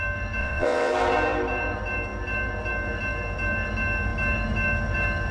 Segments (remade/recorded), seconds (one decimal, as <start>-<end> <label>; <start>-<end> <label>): 0.0-0.4 recorded; 0.4-0.9 remade; 0.9-5.3 recorded